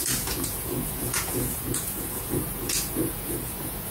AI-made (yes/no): yes